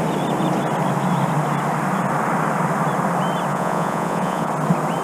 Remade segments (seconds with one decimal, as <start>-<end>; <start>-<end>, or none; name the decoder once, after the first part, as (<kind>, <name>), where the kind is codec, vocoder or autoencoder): 3.5-4.5 (vocoder, Vocos)